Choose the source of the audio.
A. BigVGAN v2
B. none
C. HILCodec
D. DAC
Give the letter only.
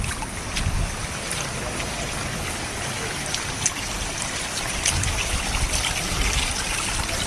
B